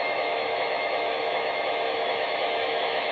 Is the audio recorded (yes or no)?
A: no